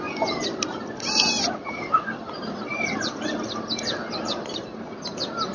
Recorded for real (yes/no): yes